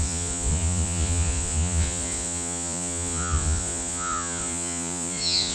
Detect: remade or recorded remade